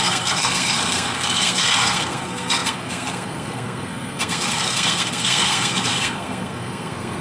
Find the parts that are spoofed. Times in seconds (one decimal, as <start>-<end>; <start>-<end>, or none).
0.0-7.2